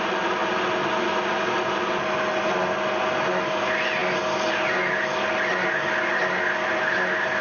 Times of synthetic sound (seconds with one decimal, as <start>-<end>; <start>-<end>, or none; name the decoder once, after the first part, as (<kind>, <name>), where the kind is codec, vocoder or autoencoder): none